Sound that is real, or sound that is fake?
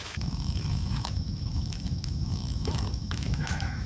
fake